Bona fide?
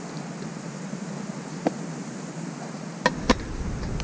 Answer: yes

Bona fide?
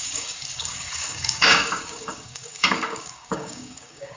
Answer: no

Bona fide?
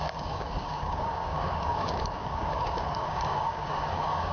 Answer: no